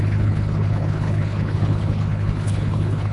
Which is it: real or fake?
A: fake